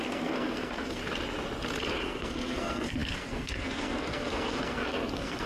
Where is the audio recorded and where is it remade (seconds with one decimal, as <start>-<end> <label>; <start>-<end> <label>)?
0.0-1.0 remade; 1.0-2.0 recorded; 2.0-5.5 remade